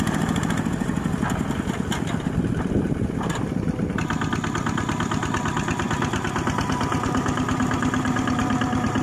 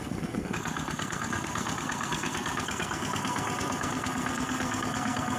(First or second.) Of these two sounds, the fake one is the second